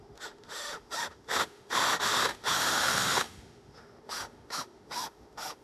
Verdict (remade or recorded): remade